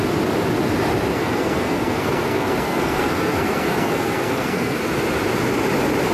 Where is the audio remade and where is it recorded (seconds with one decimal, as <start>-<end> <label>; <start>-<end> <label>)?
0.0-1.1 recorded; 1.1-4.8 remade; 4.8-6.1 recorded